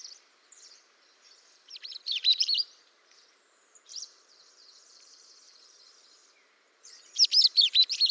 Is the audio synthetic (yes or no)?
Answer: yes